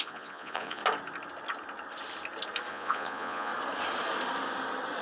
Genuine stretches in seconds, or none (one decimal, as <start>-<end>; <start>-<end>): 0.8-2.7; 3.5-5.0